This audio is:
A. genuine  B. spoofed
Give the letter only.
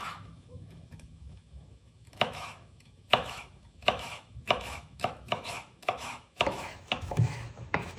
B